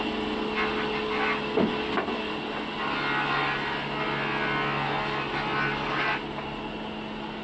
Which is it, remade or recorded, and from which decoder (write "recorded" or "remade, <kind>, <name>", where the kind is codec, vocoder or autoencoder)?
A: recorded